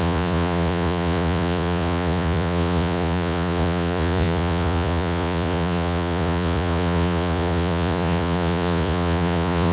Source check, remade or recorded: remade